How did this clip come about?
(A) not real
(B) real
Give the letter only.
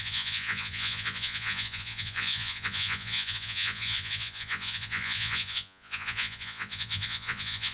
A